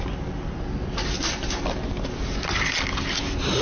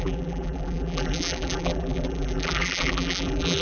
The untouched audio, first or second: first